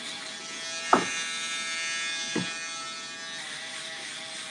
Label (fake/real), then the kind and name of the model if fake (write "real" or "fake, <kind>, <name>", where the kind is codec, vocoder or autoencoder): real